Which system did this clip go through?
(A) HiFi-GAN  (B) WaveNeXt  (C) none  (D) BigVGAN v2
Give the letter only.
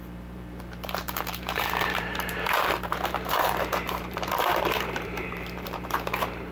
D